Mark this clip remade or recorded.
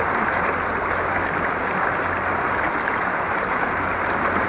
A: recorded